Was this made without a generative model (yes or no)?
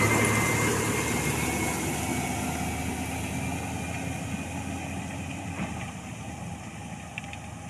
yes